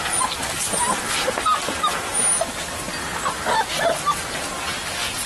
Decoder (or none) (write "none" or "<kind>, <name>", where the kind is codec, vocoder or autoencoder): none